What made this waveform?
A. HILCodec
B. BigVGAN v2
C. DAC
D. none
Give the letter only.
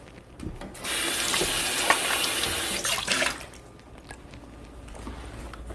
D